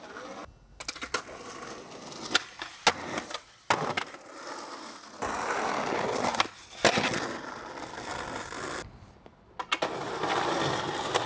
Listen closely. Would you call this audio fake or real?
real